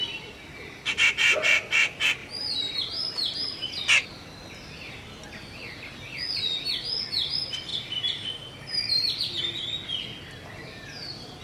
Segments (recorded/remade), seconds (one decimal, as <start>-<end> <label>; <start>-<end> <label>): 0.0-2.2 recorded; 2.2-2.8 remade; 2.8-7.7 recorded; 7.7-9.4 remade; 9.4-11.4 recorded